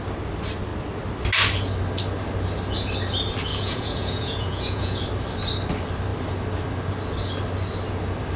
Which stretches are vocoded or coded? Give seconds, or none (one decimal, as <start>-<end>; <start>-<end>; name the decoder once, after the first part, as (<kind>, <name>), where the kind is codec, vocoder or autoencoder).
3.5-5.0 (vocoder, Vocos)

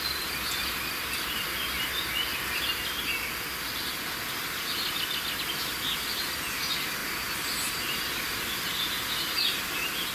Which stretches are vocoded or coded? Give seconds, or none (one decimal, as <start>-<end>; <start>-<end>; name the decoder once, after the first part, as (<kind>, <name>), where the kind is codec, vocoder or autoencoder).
none